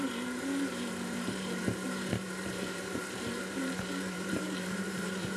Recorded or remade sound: remade